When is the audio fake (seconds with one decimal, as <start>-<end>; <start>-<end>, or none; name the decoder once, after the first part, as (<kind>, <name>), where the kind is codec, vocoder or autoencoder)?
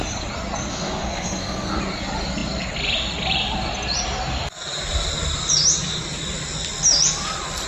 0.7-1.8 (codec, SNAC)